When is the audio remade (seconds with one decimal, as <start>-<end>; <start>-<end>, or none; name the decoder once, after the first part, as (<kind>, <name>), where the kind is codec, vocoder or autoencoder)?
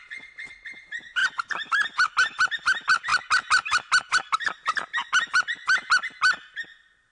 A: none